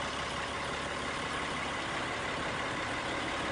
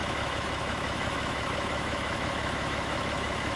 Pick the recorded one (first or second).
first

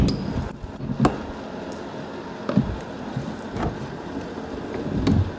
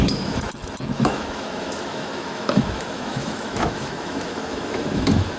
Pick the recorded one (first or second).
first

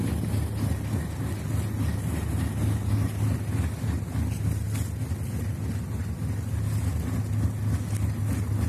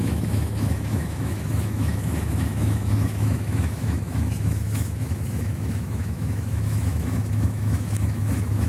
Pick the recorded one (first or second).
first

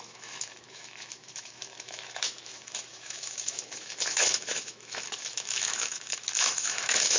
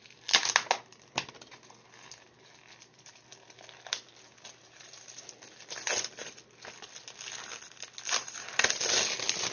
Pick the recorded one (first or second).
second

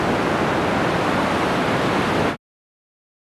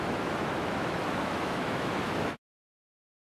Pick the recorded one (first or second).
first